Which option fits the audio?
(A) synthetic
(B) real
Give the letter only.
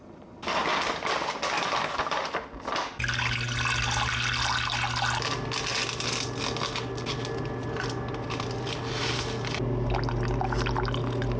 B